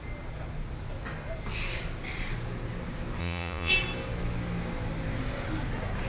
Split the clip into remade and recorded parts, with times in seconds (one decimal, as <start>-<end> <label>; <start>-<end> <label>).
0.0-3.2 recorded; 3.2-3.7 remade; 3.7-6.1 recorded